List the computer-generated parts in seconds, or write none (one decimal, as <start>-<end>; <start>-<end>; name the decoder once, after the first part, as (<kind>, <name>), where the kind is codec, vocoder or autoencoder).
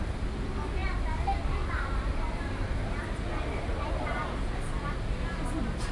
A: none